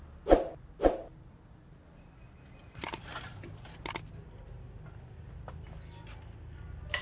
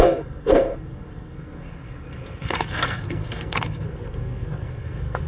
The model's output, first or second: second